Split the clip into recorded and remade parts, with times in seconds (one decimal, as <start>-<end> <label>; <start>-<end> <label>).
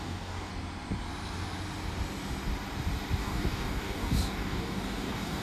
0.0-0.5 remade; 0.5-3.2 recorded; 3.2-5.4 remade